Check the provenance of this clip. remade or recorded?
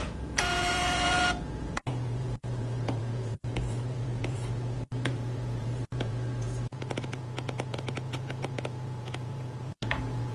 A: remade